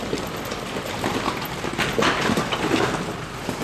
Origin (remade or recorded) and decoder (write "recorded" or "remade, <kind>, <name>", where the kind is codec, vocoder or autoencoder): recorded